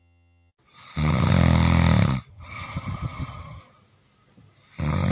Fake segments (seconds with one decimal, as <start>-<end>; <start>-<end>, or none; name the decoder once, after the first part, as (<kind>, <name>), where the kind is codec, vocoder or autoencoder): 0.0-0.5 (vocoder, HiFi-GAN); 2.3-3.6